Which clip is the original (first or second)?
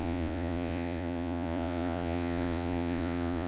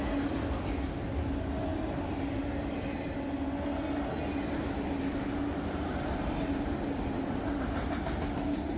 second